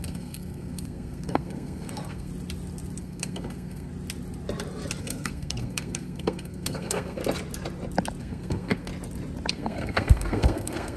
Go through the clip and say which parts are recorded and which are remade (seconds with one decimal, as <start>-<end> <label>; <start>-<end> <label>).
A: 0.0-2.3 remade; 2.3-3.0 recorded; 3.0-3.9 remade; 3.9-5.0 recorded; 5.0-7.2 remade; 7.2-8.2 recorded; 8.2-8.9 remade; 8.9-9.5 recorded; 9.5-11.0 remade